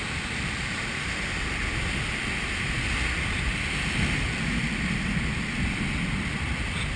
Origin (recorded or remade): recorded